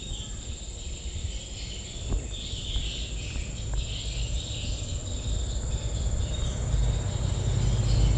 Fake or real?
real